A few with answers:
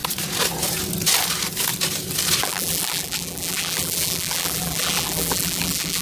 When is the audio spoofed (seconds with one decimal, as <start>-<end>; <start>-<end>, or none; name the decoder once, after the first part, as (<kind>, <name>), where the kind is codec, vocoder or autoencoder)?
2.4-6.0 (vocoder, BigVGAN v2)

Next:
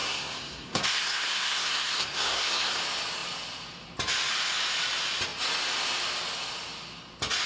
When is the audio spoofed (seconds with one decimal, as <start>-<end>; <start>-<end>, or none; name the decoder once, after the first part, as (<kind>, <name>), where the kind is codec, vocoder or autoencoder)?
0.0-2.8 (codec, SNAC)

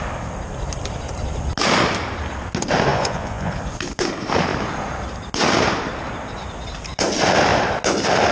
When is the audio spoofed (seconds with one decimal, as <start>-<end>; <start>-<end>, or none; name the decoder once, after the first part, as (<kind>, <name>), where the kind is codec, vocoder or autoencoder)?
2.9-3.5 (vocoder, Vocos)